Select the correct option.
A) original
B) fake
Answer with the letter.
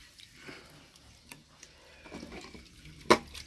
A